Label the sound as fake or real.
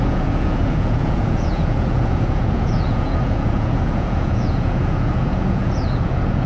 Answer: fake